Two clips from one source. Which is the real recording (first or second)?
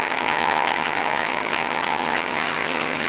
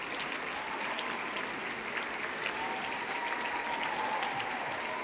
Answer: second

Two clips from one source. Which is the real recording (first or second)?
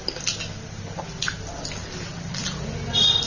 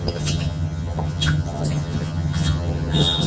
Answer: first